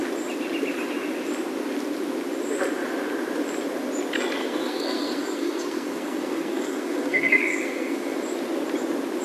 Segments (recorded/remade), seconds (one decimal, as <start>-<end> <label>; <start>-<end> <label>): 0.0-4.4 recorded; 4.4-8.2 remade; 8.2-9.2 recorded